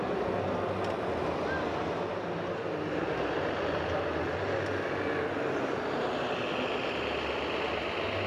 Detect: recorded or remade recorded